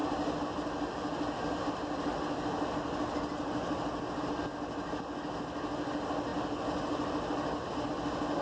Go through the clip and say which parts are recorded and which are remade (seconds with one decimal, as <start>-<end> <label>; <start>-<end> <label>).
0.0-8.4 recorded